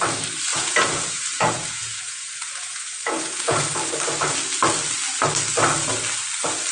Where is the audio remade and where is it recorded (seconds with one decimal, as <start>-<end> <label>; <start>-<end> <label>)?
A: 0.0-0.5 recorded; 0.5-3.6 remade; 3.6-6.7 recorded